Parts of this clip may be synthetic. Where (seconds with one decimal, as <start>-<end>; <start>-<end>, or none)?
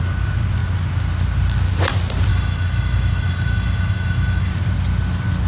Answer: 2.3-4.5